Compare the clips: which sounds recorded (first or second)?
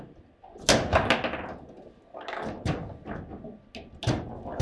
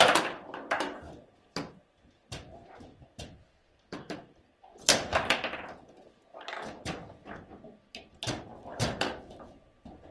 first